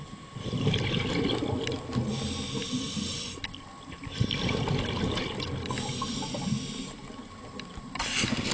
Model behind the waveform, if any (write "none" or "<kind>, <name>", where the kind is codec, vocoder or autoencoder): none